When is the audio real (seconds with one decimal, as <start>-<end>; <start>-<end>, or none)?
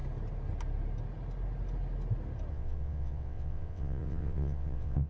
0.0-2.5